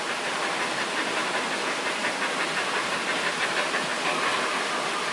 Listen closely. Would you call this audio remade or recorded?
recorded